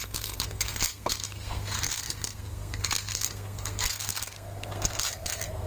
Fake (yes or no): yes